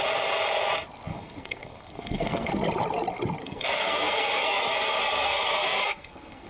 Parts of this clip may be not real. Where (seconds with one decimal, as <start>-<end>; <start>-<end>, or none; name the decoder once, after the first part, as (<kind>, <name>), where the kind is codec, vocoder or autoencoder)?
1.1-2.5 (codec, SNAC); 3.4-6.5